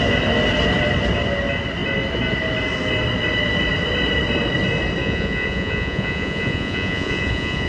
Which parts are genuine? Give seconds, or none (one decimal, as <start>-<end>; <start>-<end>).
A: 0.0-5.0